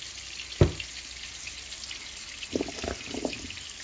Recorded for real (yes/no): yes